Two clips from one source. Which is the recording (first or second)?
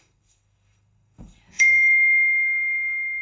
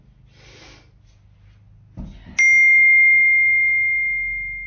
second